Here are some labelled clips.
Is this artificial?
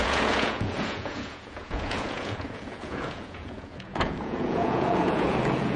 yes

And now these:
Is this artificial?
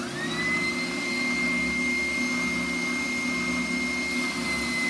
no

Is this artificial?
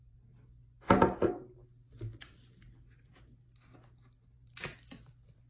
no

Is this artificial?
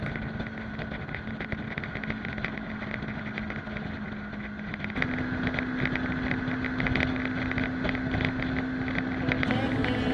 no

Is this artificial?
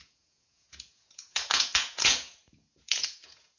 yes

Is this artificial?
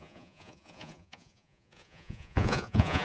yes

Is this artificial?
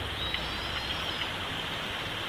no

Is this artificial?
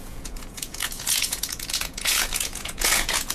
yes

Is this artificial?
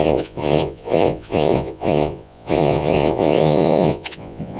yes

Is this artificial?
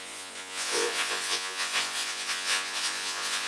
yes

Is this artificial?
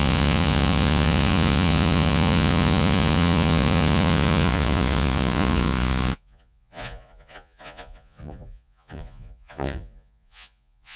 yes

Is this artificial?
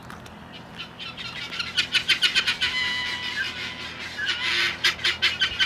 no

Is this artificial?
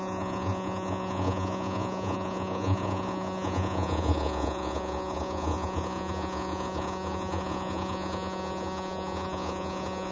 yes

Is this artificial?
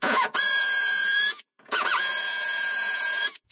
yes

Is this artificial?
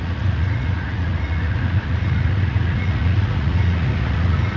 yes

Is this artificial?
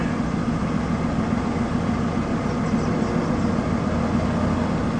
no